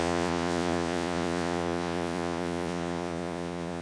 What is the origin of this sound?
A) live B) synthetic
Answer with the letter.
B